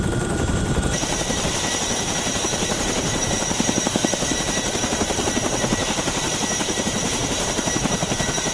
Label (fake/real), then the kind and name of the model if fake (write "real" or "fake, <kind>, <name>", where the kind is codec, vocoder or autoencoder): fake, vocoder, BigVGAN v2